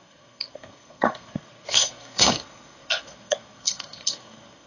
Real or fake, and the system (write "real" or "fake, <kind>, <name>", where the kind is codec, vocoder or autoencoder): fake, codec, SNAC